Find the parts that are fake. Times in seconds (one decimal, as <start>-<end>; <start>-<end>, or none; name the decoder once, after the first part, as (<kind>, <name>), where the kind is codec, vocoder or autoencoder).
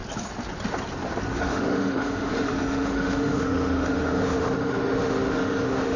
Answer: 1.3-6.0 (autoencoder, DAC-VAE)